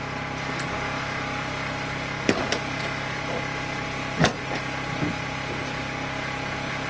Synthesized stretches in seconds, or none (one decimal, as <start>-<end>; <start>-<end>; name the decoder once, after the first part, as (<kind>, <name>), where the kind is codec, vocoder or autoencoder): none